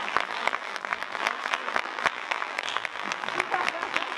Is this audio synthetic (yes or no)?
yes